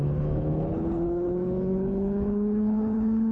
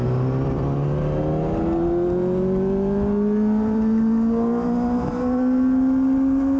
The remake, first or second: first